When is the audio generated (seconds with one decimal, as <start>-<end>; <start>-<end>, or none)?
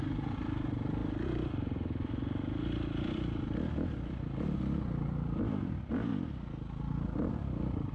0.0-6.1; 7.3-7.9